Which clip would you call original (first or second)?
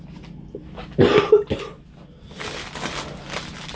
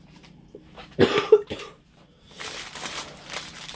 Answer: first